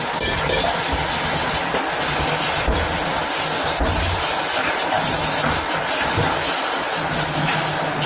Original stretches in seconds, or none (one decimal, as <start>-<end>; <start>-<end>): 0.0-8.1